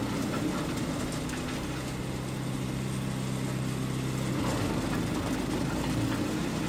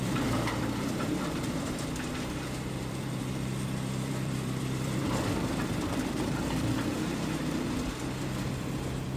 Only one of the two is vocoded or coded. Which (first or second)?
second